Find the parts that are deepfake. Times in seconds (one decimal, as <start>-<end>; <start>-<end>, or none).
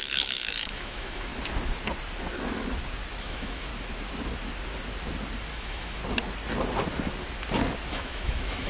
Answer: 0.0-1.3; 3.2-3.7; 5.5-6.0; 7.9-8.7